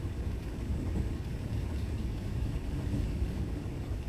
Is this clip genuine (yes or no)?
no